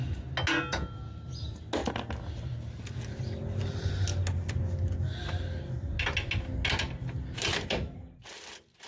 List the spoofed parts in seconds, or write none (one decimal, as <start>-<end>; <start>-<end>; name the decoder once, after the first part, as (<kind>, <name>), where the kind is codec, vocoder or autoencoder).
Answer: none

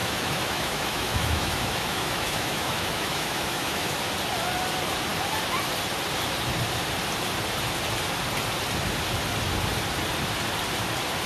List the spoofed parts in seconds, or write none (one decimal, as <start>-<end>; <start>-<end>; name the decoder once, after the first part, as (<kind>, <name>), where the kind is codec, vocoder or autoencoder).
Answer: 0.0-4.1 (autoencoder, DAC-VAE)

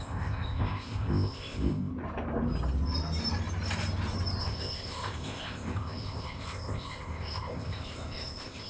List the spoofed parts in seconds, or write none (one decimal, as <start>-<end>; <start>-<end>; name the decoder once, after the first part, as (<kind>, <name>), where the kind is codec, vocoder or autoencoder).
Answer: 0.0-1.9 (codec, ZipCodec); 4.4-8.7

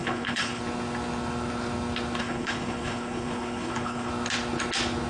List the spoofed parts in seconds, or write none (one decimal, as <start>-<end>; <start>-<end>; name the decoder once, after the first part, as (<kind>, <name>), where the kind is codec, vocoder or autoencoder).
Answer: 0.0-0.6 (codec, HILCodec); 2.2-4.1